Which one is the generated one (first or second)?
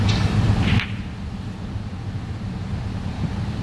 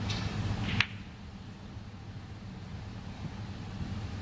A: first